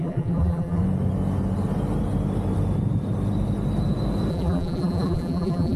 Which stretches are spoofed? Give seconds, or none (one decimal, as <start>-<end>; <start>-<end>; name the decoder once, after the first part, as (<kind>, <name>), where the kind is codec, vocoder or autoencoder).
0.0-0.8 (vocoder, BigVGAN v2); 4.3-5.8